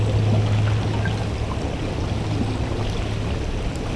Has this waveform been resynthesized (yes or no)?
no